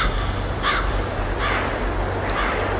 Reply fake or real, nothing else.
real